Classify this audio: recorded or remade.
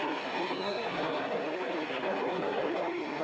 remade